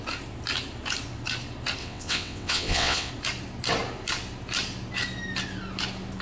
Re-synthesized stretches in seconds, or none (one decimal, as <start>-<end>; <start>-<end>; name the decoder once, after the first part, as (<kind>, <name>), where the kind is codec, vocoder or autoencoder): 1.8-3.1 (vocoder, WaveNeXt)